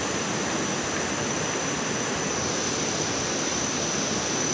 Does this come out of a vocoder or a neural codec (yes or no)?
no